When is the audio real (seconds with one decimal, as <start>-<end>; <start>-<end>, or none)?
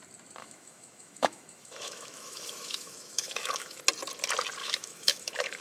0.0-0.4; 3.8-4.6